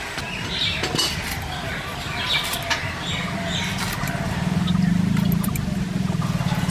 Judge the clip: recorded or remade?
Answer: recorded